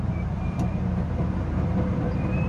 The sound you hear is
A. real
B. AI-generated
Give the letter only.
B